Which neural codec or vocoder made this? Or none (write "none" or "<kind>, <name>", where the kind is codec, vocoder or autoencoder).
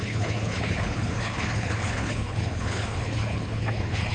codec, HILCodec